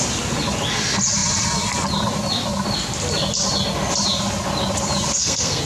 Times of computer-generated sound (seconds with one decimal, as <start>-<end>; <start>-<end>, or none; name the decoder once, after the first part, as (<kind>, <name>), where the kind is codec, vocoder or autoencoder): 5.1-5.6 (codec, SNAC)